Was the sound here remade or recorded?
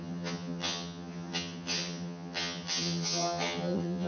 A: remade